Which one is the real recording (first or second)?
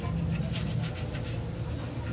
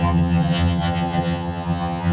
first